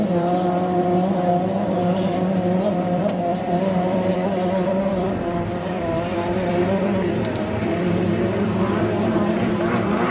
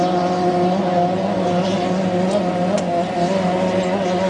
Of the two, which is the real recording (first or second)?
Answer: second